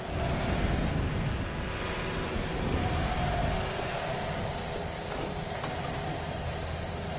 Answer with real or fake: real